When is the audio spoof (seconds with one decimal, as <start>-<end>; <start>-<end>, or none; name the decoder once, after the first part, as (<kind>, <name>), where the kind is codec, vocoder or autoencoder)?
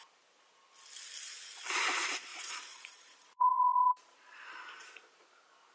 2.3-4.7 (vocoder, Vocos)